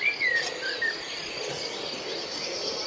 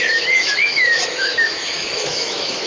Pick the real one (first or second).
first